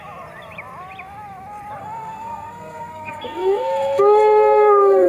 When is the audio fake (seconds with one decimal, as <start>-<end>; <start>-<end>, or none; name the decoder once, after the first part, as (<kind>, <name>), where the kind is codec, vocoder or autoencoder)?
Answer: 1.8-5.1 (codec, SNAC)